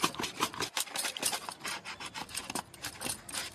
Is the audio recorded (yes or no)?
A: yes